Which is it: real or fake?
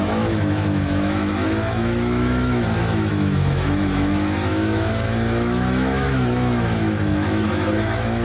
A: fake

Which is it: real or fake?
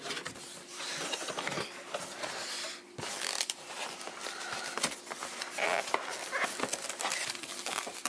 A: real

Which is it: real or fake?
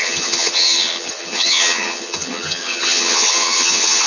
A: fake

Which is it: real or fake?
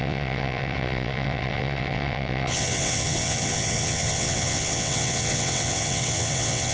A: fake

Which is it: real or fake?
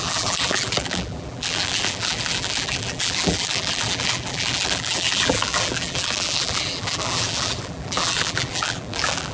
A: fake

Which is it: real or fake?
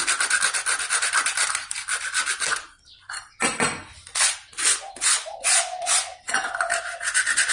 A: real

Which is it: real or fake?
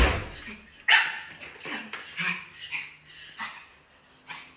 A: real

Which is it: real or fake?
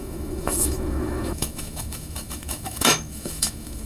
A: fake